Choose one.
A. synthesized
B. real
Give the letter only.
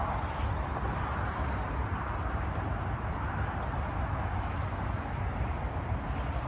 B